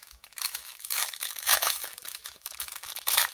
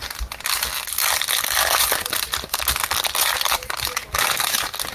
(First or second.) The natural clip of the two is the second